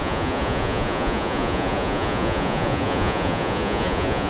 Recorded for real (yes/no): no